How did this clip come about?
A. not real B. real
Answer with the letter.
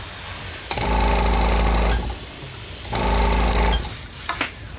B